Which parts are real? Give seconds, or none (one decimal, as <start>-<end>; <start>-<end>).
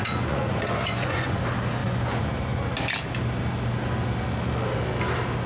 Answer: 1.4-1.8; 2.7-5.5